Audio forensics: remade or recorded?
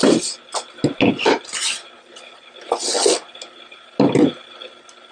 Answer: recorded